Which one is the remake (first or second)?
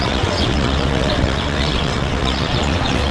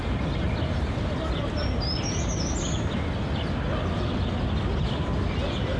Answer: first